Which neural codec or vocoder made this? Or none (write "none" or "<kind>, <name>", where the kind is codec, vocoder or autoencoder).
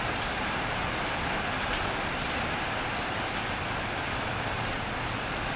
none